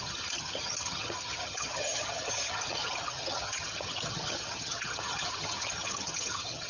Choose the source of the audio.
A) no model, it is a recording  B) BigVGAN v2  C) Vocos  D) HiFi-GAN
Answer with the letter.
D